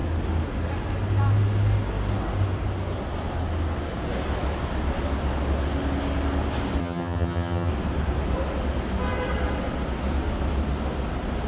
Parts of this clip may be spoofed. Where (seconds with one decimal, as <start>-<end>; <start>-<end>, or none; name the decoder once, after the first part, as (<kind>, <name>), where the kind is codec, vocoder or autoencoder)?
6.8-7.7 (vocoder, HiFi-GAN)